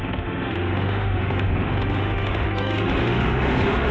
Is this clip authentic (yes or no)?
no